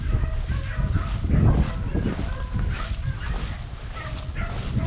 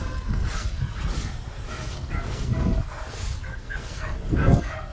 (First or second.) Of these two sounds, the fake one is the second